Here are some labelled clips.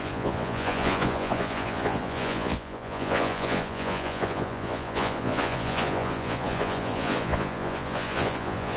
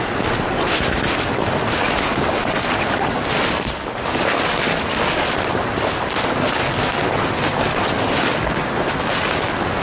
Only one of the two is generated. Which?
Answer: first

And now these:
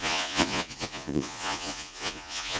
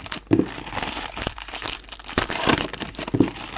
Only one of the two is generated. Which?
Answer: first